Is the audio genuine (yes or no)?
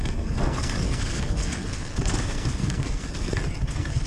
no